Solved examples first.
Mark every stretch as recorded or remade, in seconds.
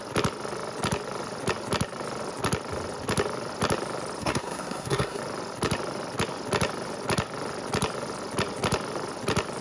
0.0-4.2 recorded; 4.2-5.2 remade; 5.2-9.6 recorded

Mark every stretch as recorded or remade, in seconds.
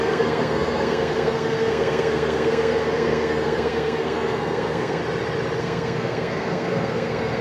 0.0-5.0 remade; 5.0-5.6 recorded; 5.6-7.4 remade